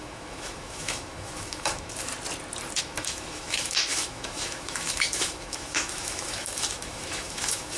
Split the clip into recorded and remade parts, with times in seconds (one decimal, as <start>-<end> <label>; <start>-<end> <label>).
0.0-2.1 remade; 2.1-2.8 recorded; 2.8-7.8 remade